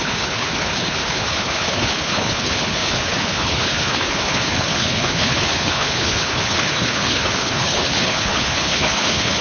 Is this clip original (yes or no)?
no